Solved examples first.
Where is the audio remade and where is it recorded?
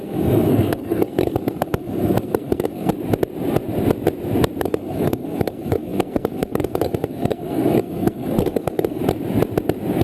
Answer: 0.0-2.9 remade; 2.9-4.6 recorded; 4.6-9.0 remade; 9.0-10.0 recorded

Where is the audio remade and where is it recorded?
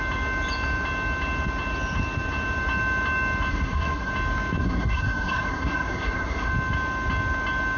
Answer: 0.0-3.5 recorded; 3.5-4.1 remade; 4.1-4.6 recorded; 4.6-6.5 remade; 6.5-7.8 recorded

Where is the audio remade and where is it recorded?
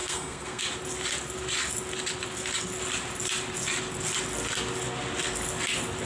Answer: 0.0-0.6 remade; 0.6-6.1 recorded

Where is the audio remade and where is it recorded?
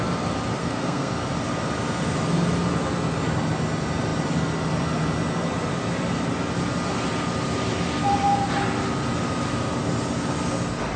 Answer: 0.0-0.6 recorded; 0.6-1.1 remade; 1.1-11.0 recorded